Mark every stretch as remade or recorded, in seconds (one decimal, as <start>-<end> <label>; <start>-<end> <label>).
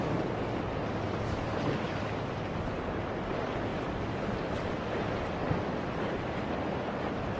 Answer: 0.0-1.9 remade; 1.9-3.1 recorded; 3.1-7.4 remade